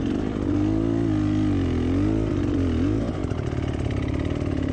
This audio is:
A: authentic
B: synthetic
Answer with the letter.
A